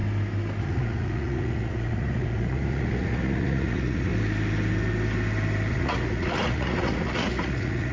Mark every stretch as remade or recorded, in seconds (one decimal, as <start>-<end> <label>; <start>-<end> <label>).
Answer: 0.0-0.6 recorded; 0.6-4.1 remade; 4.1-5.7 recorded; 5.7-7.9 remade